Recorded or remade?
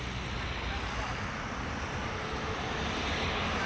recorded